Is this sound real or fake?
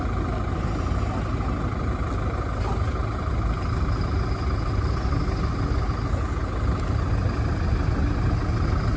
real